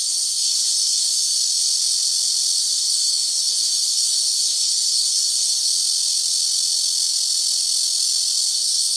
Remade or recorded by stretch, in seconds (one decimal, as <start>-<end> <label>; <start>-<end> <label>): 0.0-1.4 remade; 1.4-2.6 recorded; 2.6-5.7 remade; 5.7-8.5 recorded; 8.5-9.0 remade